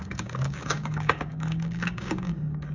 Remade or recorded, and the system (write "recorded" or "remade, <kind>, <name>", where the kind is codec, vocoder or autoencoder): remade, codec, DAC